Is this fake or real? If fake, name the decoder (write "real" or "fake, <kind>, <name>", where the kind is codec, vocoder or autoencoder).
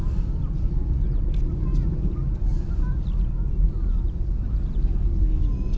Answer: real